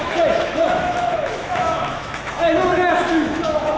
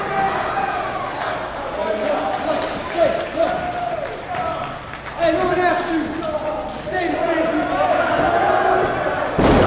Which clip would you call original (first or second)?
second